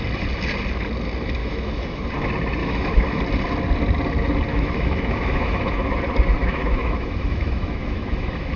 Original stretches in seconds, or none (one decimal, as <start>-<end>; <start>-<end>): 0.0-1.4; 2.0-2.6; 3.2-4.5; 6.0-6.4